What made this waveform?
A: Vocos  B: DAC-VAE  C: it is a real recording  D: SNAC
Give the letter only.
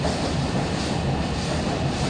C